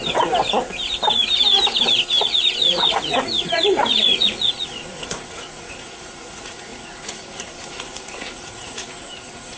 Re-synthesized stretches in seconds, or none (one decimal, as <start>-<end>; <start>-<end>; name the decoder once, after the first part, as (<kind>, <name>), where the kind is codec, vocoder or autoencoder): 2.2-9.6 (vocoder, Vocos)